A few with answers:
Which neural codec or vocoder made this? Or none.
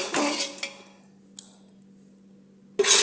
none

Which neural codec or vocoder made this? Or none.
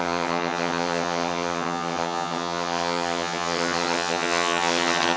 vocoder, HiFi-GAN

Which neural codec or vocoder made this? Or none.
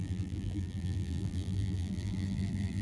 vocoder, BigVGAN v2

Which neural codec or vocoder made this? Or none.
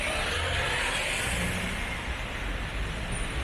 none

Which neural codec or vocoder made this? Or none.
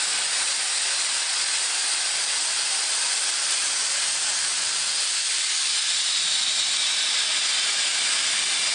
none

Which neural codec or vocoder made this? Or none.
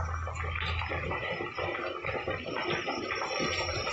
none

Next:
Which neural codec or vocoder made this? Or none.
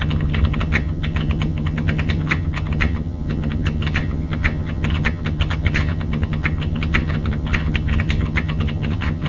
vocoder, HiFi-GAN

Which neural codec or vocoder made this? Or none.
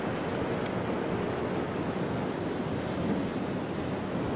none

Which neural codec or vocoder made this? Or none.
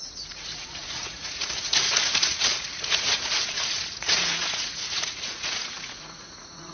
vocoder, Vocos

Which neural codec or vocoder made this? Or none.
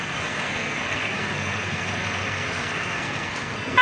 codec, SNAC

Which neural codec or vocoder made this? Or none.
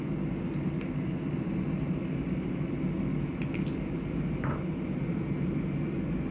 none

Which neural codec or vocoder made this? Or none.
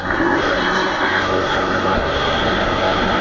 codec, SNAC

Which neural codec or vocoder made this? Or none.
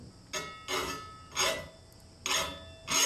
none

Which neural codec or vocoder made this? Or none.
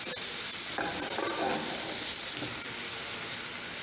none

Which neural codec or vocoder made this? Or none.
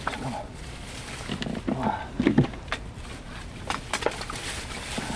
none